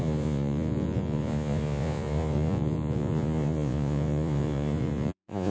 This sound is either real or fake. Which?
fake